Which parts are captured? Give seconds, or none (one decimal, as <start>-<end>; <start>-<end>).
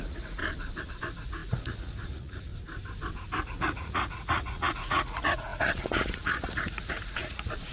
0.4-1.0; 2.5-3.5